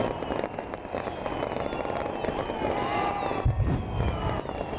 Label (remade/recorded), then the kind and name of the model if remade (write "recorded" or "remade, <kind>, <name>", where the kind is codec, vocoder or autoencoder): recorded